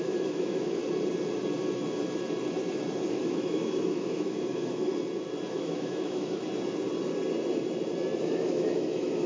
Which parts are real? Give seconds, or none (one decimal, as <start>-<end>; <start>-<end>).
0.8-3.1; 4.9-5.5; 6.4-8.2